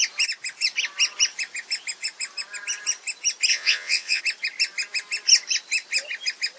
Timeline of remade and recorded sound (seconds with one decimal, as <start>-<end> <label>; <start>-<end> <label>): 0.0-3.5 recorded; 3.5-4.2 remade; 4.2-6.6 recorded